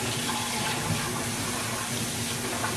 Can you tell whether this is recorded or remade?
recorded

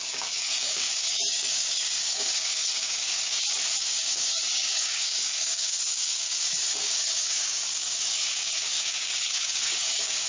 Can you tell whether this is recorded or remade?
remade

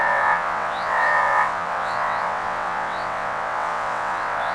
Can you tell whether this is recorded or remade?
remade